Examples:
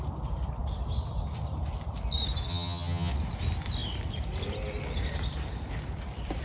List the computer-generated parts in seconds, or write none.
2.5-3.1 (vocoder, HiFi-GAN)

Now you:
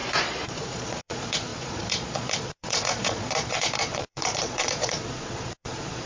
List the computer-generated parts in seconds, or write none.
0.0-6.1 (vocoder, Vocos)